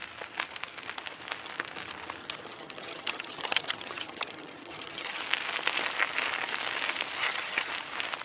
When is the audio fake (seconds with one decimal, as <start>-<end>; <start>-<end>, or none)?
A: 2.2-5.2; 7.2-7.7